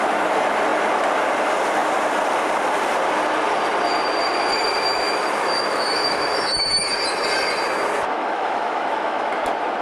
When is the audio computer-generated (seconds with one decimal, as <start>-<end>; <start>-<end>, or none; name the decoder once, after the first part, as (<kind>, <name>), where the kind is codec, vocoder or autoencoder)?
4.9-6.9 (autoencoder, DAC-VAE); 8.2-9.3